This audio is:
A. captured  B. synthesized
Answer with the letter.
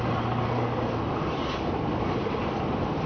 A